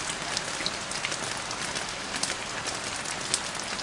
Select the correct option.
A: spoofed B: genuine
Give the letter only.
B